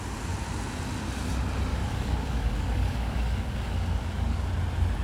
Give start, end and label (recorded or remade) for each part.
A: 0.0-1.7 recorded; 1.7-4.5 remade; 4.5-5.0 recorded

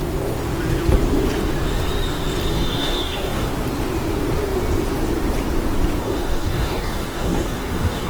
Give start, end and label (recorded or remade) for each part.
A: 0.0-2.5 recorded; 2.5-3.5 remade; 3.5-6.0 recorded; 6.0-8.1 remade